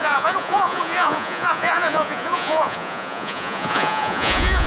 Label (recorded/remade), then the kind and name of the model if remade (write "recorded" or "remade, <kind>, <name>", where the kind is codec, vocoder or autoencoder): remade, vocoder, Vocos